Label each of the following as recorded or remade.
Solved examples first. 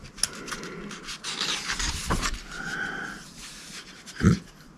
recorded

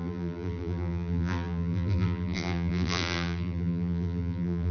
remade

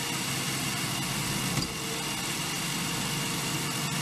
recorded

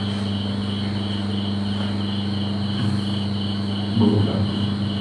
recorded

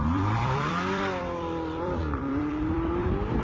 remade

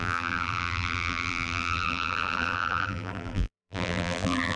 remade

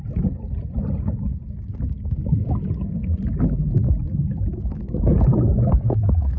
recorded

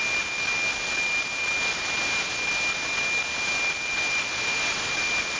recorded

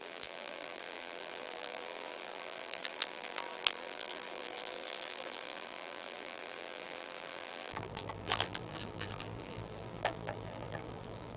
remade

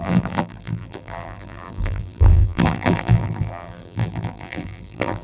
remade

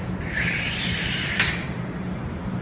remade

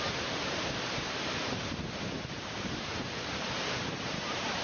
remade